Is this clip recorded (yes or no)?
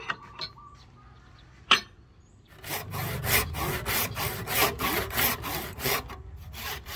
yes